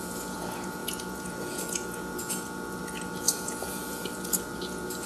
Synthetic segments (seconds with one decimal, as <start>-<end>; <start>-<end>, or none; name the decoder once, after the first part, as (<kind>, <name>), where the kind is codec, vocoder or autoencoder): 0.0-5.1 (vocoder, Vocos)